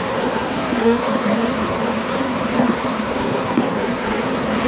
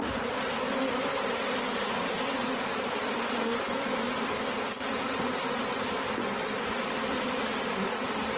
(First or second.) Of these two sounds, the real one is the second